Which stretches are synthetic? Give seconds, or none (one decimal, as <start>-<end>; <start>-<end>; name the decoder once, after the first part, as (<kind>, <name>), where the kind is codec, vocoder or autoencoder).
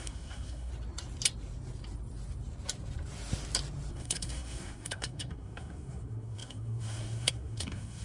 0.0-0.7 (codec, SNAC); 3.9-8.0